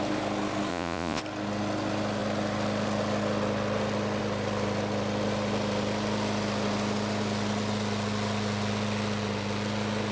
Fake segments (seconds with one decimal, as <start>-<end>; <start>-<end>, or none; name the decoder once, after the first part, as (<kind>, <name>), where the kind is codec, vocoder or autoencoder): 0.7-1.2 (vocoder, Vocos)